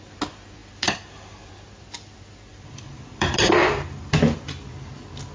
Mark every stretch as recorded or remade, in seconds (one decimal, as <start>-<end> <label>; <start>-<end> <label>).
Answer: 0.0-0.6 recorded; 0.6-1.5 remade; 1.5-2.5 recorded; 2.5-4.4 remade; 4.4-5.3 recorded